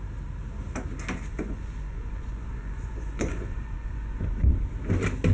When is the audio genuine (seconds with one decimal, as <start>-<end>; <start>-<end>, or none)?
0.0-1.3; 4.5-5.3